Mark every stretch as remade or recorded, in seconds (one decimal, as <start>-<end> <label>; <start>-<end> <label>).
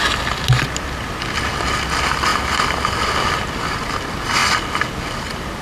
0.0-5.6 recorded